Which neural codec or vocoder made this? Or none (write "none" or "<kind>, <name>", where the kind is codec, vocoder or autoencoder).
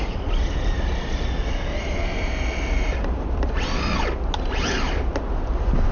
none